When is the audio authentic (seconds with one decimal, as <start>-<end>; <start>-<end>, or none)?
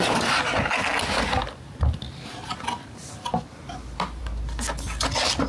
0.0-5.5